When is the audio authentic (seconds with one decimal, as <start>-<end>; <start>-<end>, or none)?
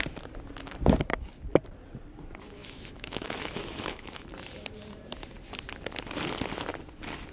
0.0-2.6; 4.3-7.3